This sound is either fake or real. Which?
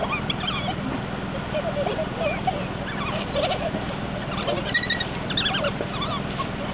real